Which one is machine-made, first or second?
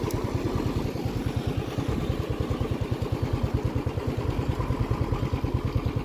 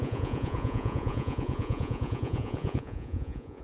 second